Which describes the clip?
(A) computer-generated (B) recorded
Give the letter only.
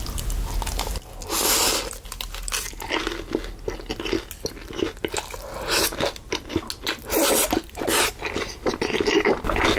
B